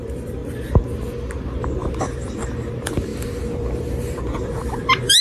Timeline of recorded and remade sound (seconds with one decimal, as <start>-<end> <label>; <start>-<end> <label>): 0.0-0.4 remade; 0.4-2.0 recorded; 2.0-5.2 remade

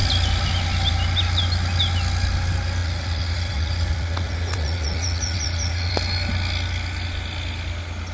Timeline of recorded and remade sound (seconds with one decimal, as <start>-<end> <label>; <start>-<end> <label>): 0.0-2.8 recorded; 2.8-5.9 remade; 5.9-8.1 recorded